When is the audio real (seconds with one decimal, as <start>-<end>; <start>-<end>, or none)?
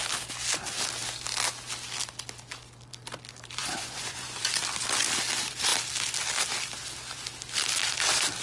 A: 0.0-3.6; 4.4-8.4